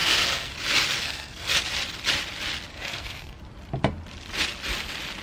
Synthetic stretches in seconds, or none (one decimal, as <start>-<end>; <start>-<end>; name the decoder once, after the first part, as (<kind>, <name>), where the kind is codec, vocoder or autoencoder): 0.0-0.5 (codec, SNAC); 1.0-1.6; 2.7-3.4